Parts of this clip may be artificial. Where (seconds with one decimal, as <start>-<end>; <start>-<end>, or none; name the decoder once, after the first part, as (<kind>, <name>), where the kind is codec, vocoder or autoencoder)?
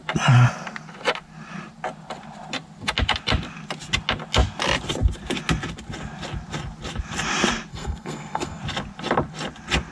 7.7-8.6 (codec, SNAC)